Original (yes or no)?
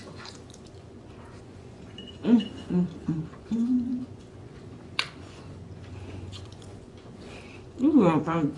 no